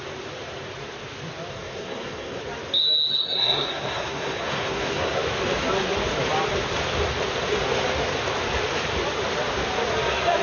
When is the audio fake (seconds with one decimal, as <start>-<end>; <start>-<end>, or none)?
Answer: 1.5-2.4; 3.1-5.2